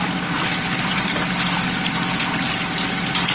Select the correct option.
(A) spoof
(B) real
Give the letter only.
B